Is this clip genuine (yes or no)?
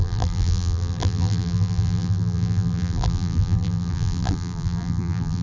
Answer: no